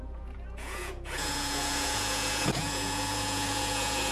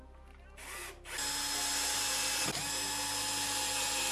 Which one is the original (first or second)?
second